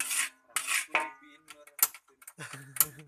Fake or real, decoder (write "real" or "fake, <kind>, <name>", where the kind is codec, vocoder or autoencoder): real